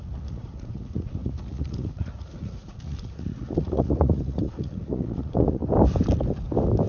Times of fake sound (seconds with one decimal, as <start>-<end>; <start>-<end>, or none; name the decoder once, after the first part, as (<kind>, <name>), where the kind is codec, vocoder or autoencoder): 0.0-5.6 (vocoder, Vocos)